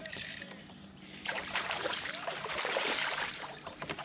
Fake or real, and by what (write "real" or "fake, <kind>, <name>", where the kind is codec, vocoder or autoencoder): fake, vocoder, BigVGAN v2